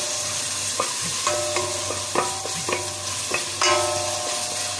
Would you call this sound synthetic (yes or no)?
no